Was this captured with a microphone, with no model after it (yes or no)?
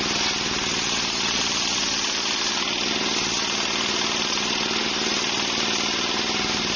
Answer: yes